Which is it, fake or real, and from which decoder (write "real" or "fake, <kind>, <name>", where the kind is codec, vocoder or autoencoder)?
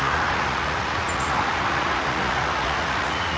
fake, vocoder, Vocos